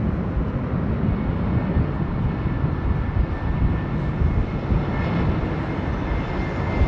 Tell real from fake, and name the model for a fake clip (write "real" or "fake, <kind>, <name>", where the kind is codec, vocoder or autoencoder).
real